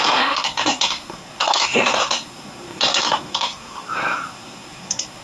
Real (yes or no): no